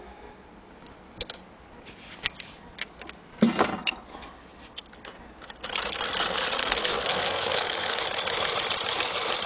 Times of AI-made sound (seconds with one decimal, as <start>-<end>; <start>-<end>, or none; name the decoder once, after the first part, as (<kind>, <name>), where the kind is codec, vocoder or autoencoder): 6.6-8.0 (codec, SNAC)